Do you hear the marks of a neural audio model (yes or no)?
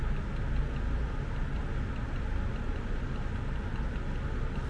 no